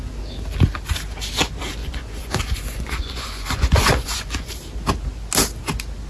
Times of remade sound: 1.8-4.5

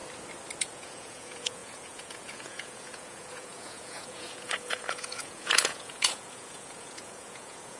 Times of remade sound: 0.6-7.8

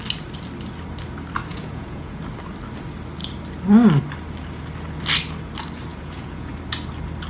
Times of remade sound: 1.5-2.2; 5.9-6.5